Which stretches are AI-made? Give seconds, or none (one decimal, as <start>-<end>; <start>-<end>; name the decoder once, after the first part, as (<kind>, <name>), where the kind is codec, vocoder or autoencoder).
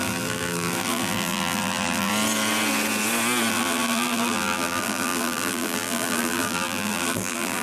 0.0-2.1 (vocoder, BigVGAN v2); 3.5-7.6